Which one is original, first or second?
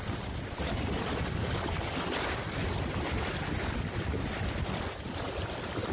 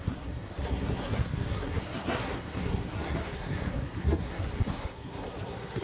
first